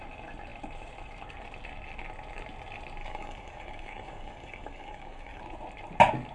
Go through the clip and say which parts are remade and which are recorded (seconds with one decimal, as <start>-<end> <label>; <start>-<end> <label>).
0.0-3.0 recorded; 3.0-5.4 remade; 5.4-6.3 recorded